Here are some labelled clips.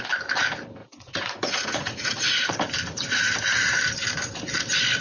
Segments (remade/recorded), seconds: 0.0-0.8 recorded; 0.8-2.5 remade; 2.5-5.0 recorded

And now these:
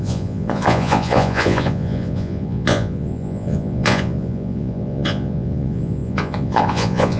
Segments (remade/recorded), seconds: 0.0-7.2 remade

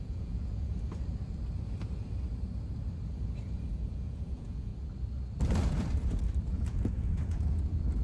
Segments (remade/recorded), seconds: 0.0-0.7 remade; 0.7-3.7 recorded; 3.7-4.7 remade; 4.7-6.5 recorded; 6.5-8.0 remade

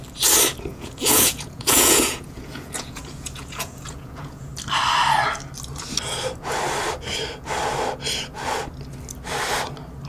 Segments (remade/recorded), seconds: 0.0-0.7 recorded; 0.7-4.5 remade; 4.5-10.1 recorded

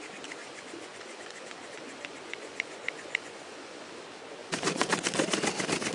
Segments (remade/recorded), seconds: 0.0-0.4 recorded; 0.4-3.9 remade; 3.9-4.4 recorded; 4.4-4.9 remade; 4.9-5.9 recorded